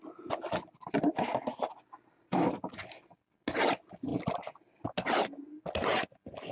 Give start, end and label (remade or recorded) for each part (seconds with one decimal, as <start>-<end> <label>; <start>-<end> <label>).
0.0-6.5 recorded